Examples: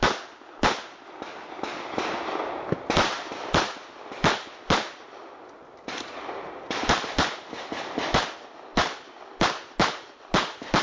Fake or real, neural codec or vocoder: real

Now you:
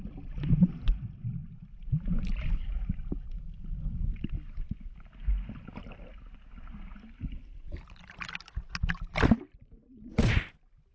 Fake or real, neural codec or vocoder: real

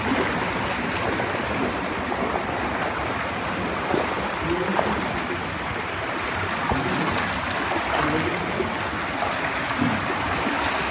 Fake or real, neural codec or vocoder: real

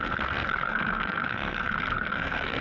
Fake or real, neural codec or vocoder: fake, codec, SNAC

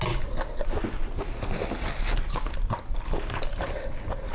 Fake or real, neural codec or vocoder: real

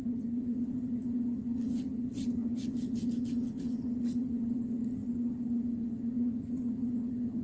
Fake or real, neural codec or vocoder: fake, vocoder, HiFi-GAN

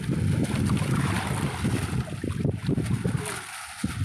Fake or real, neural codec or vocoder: real